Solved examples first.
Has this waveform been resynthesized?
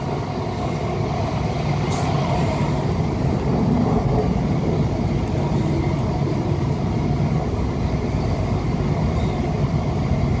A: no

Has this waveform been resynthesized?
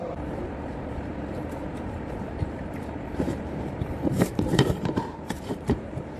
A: yes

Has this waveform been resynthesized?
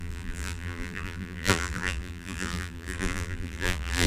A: yes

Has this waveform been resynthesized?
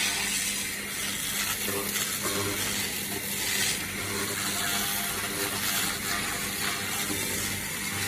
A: no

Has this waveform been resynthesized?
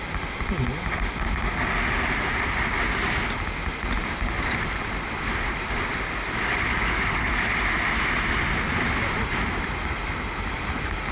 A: no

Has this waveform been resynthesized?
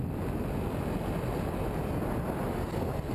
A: no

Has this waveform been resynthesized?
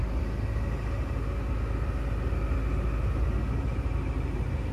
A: no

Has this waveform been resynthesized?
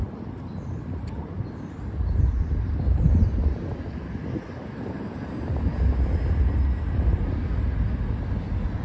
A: no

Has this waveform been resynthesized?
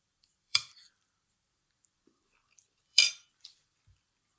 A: yes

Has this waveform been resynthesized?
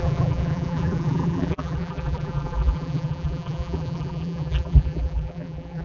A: yes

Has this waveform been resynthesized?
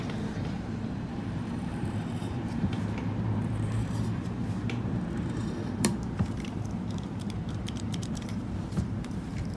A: yes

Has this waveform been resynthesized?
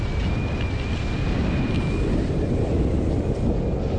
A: no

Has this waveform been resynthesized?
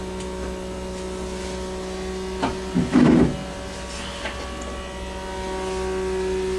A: no